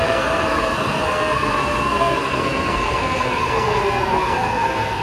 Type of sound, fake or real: fake